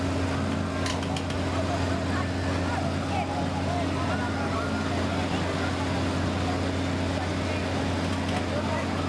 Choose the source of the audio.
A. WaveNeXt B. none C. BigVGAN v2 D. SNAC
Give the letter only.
B